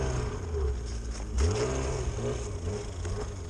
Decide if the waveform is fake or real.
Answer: real